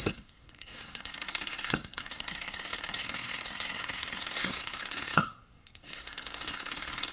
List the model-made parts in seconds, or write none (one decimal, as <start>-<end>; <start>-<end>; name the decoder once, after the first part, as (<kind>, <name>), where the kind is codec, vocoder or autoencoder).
0.0-7.1 (codec, SNAC)